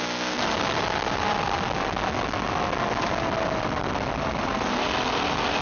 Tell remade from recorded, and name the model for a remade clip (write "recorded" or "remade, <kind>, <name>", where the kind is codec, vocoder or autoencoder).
recorded